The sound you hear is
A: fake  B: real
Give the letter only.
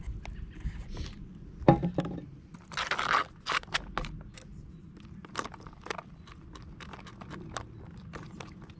B